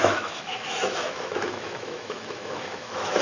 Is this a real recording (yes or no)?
no